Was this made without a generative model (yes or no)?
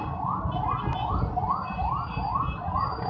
yes